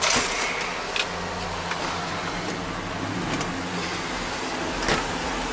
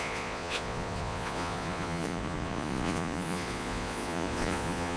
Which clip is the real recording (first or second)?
first